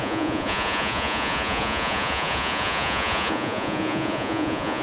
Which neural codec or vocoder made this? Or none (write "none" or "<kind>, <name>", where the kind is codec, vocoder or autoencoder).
vocoder, Vocos